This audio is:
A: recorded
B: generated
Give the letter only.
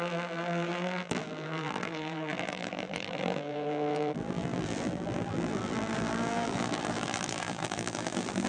B